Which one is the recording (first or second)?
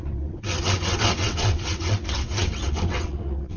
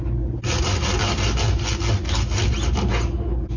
second